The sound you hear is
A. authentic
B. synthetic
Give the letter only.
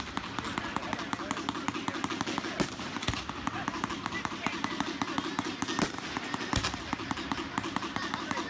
A